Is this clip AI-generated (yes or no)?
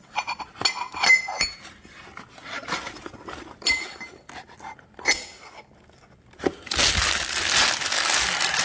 no